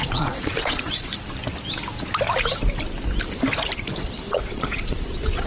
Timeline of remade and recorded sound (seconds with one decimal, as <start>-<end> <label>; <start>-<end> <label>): 0.0-1.1 remade; 1.1-4.3 recorded; 4.3-5.5 remade